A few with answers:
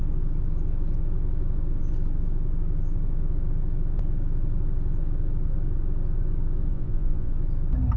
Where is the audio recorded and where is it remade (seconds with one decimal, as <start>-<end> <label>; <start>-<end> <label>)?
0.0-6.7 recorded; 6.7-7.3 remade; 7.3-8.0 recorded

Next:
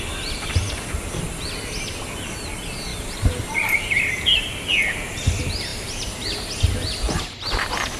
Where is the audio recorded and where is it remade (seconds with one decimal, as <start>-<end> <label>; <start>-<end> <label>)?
0.0-2.9 recorded; 2.9-4.5 remade; 4.5-8.0 recorded

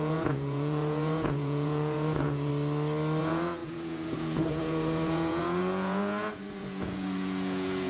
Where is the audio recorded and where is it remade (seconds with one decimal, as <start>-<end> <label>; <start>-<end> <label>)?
0.0-2.5 remade; 2.5-3.2 recorded; 3.2-7.9 remade

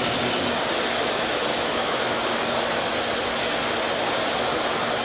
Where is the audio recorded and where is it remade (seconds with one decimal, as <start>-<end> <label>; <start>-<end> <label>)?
0.0-1.5 recorded; 1.5-2.6 remade; 2.6-5.0 recorded

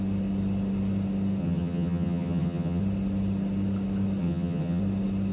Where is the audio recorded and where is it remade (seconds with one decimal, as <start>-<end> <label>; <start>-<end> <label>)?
0.0-1.4 recorded; 1.4-2.8 remade; 2.8-4.2 recorded; 4.2-4.8 remade; 4.8-5.3 recorded

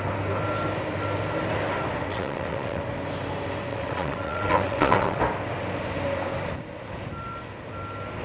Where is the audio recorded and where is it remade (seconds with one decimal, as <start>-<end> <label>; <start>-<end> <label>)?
0.0-2.1 recorded; 2.1-2.8 remade; 2.8-3.7 recorded; 3.7-5.2 remade; 5.2-8.2 recorded

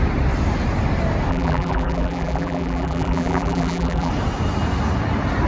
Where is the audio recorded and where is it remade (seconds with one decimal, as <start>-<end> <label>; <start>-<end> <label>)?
0.0-1.3 recorded; 1.3-4.1 remade; 4.1-5.5 recorded